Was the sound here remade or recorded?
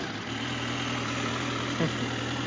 recorded